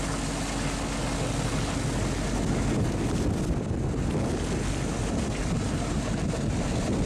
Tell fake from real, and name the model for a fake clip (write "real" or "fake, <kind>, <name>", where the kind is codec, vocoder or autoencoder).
real